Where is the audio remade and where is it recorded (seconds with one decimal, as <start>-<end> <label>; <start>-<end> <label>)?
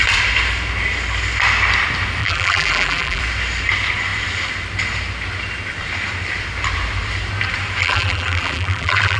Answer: 0.0-2.2 recorded; 2.2-3.2 remade; 3.2-7.8 recorded; 7.8-9.2 remade